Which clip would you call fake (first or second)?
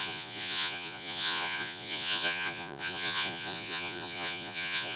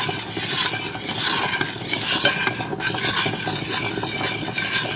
first